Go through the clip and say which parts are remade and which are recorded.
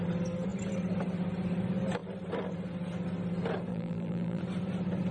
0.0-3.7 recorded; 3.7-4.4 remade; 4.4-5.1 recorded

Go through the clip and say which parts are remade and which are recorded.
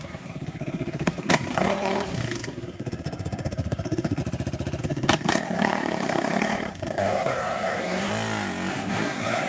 0.0-4.2 remade; 4.2-4.8 recorded; 4.8-8.1 remade; 8.1-8.7 recorded; 8.7-9.5 remade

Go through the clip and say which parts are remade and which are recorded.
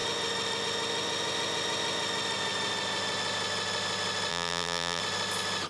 0.0-4.3 recorded; 4.3-5.0 remade; 5.0-5.7 recorded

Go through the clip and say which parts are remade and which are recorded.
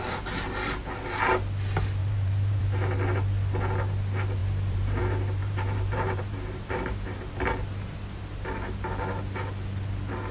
0.0-2.0 recorded; 2.0-2.6 remade; 2.6-4.4 recorded; 4.4-5.0 remade; 5.0-5.4 recorded; 5.4-7.3 remade; 7.3-10.3 recorded